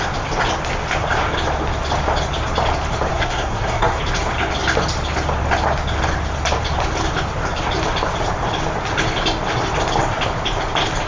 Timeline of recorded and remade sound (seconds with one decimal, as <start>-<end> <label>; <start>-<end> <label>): 0.0-3.1 recorded; 3.1-4.0 remade; 4.0-11.1 recorded